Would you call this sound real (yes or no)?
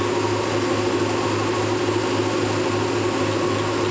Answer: yes